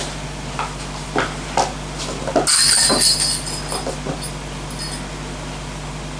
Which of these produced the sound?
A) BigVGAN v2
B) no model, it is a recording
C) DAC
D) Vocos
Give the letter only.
B